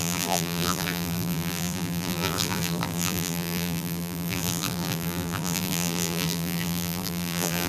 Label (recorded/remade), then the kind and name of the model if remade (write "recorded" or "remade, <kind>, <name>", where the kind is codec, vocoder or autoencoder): remade, vocoder, BigVGAN v2